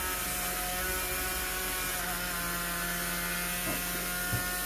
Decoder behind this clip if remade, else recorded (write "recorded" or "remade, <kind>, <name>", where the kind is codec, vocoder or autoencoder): recorded